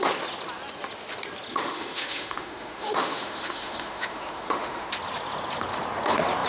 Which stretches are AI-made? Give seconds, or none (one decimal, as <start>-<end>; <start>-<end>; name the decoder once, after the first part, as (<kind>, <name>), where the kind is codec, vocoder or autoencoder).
1.5-4.9 (autoencoder, DAC-VAE)